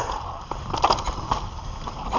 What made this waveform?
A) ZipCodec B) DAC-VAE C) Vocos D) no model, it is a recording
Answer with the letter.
D